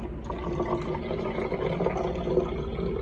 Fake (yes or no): no